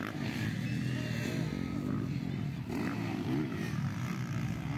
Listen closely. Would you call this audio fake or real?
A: real